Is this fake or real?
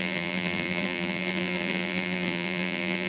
fake